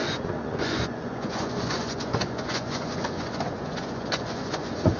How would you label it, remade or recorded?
remade